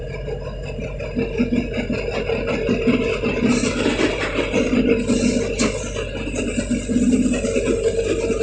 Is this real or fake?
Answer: real